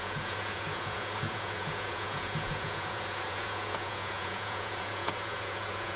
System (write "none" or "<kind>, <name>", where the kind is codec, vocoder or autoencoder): vocoder, Vocos